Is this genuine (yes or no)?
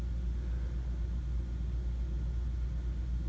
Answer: yes